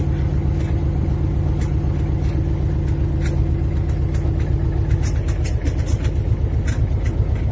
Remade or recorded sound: recorded